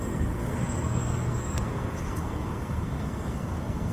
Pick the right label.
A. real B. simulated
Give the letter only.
B